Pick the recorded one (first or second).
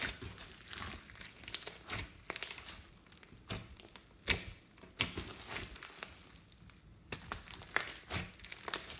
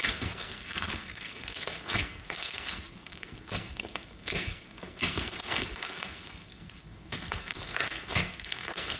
first